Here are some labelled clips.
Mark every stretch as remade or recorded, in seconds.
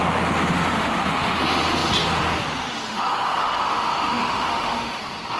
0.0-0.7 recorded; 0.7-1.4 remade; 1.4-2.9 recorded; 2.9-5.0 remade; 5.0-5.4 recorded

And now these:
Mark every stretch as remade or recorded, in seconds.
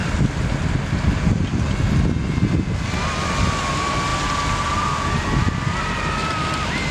0.0-6.9 recorded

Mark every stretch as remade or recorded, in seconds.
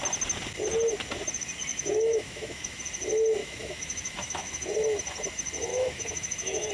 0.0-1.7 recorded; 1.7-2.8 remade; 2.8-3.4 recorded; 3.4-4.7 remade; 4.7-5.7 recorded; 5.7-6.7 remade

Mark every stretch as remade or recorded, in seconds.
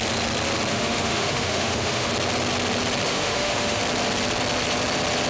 0.0-0.7 recorded; 0.7-2.1 remade; 2.1-3.1 recorded; 3.1-3.8 remade; 3.8-5.3 recorded